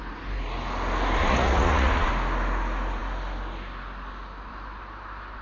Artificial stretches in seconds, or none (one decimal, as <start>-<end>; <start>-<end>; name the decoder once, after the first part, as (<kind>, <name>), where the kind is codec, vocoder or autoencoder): 1.2-2.1 (vocoder, Vocos)